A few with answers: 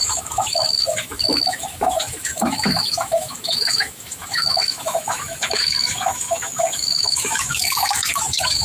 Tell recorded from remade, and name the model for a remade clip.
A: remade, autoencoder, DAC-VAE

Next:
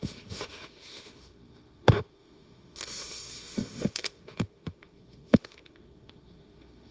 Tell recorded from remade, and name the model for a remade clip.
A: remade, autoencoder, DAC-VAE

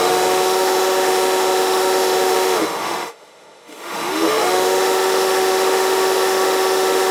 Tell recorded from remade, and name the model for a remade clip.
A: remade, autoencoder, DAC-VAE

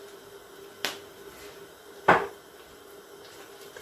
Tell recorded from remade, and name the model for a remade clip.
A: recorded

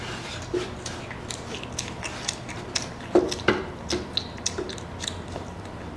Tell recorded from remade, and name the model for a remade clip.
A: recorded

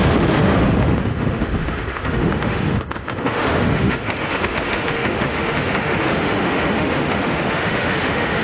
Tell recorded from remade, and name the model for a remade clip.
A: remade, autoencoder, DAC-VAE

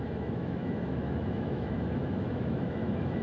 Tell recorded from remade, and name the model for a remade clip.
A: remade, autoencoder, DAC-VAE